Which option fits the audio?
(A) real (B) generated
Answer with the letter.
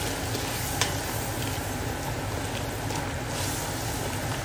A